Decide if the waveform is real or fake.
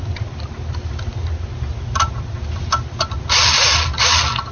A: real